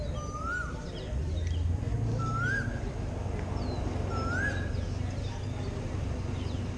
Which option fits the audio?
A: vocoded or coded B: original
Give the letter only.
B